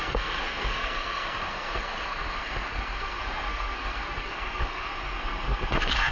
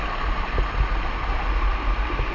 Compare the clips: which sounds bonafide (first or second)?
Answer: second